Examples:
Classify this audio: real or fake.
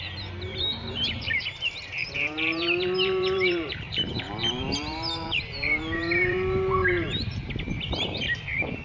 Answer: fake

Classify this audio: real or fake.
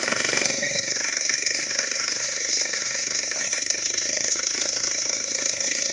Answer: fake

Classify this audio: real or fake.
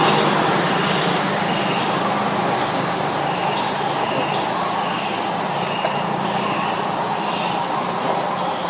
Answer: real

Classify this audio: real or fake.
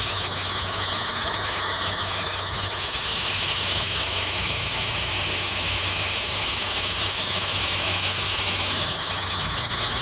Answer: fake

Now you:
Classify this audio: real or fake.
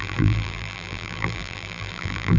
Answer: fake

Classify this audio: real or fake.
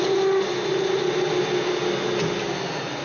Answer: real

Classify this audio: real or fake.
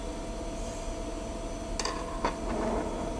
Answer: real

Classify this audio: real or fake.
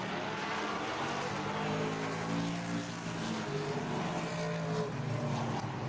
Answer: real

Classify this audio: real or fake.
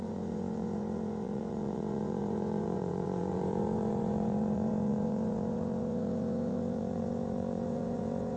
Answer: fake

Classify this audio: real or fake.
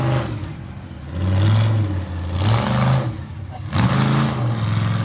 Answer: real